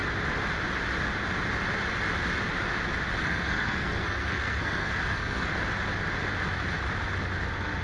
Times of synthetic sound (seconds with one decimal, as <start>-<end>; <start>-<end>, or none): 3.2-5.5